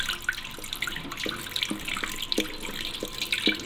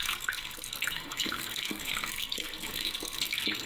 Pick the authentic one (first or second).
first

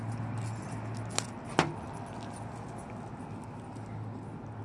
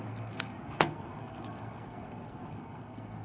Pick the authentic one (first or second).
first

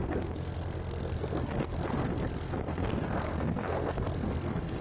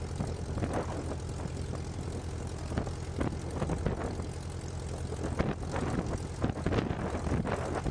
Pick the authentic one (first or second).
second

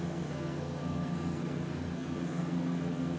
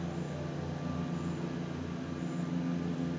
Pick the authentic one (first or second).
second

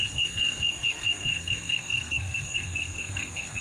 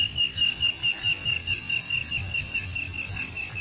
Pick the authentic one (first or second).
second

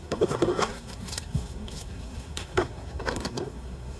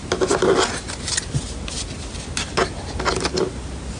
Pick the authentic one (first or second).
second